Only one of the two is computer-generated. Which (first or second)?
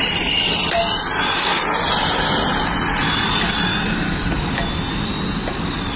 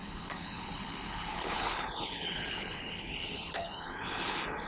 second